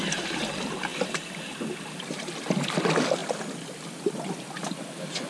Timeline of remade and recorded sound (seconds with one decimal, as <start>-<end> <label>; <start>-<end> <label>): 0.0-5.3 recorded